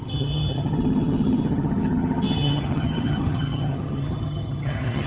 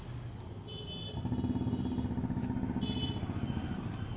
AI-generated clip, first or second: first